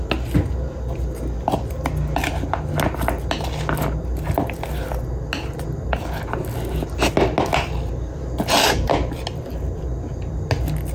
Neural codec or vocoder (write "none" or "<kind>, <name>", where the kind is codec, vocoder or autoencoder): none